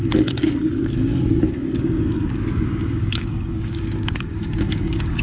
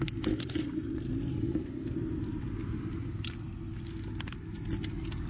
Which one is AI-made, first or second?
first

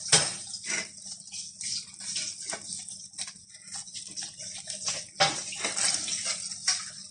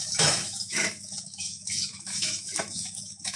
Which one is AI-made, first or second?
second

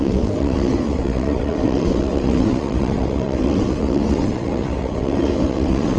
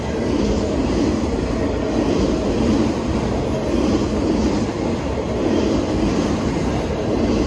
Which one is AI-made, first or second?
first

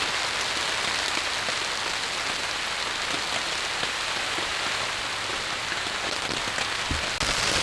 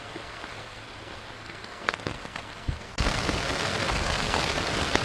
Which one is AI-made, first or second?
second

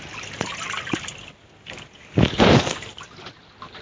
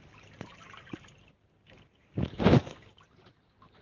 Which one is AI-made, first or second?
second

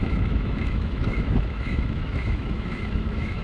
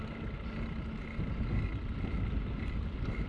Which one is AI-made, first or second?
first